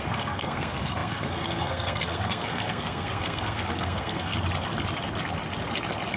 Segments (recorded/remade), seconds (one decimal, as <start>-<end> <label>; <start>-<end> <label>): 0.0-4.3 remade; 4.3-6.2 recorded